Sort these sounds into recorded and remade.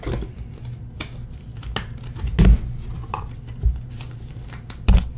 recorded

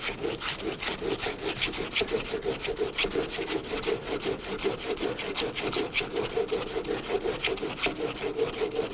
recorded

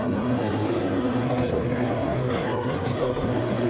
remade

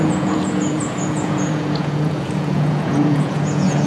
remade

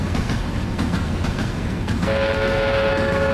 remade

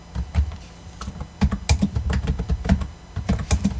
recorded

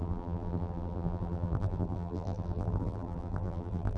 remade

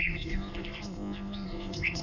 remade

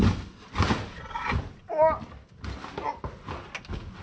recorded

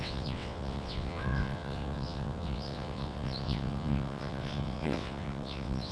remade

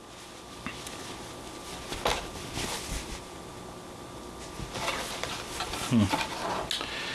recorded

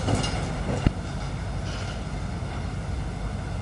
recorded